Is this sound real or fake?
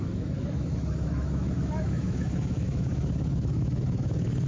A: fake